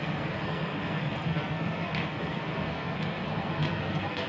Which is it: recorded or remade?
remade